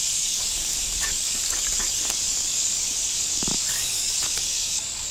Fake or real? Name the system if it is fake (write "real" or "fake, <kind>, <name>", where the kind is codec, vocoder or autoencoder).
fake, codec, DAC